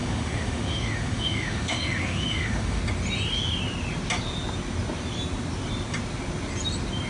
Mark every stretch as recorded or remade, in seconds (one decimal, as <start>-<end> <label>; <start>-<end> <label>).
0.0-2.8 remade; 2.8-7.1 recorded